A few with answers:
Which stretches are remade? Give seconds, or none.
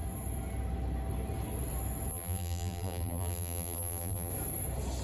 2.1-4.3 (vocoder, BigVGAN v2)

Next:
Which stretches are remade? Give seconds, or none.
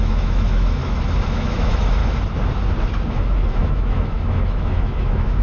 0.0-0.8 (autoencoder, DAC-VAE); 1.3-2.0; 3.1-5.4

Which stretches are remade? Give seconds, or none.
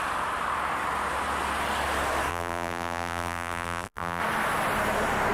2.3-4.2 (vocoder, BigVGAN v2)